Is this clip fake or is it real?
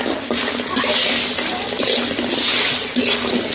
real